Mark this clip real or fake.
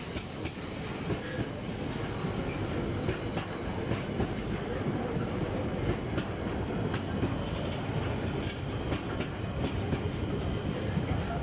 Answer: real